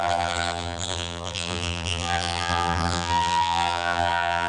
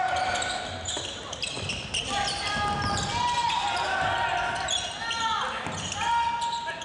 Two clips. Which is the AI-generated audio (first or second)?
first